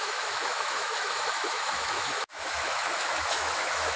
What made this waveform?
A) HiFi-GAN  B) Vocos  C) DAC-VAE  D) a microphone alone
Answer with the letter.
C